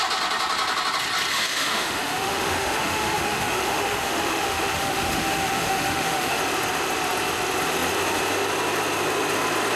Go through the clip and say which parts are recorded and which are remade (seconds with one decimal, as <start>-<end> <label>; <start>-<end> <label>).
0.0-1.3 recorded; 1.3-6.4 remade; 6.4-9.8 recorded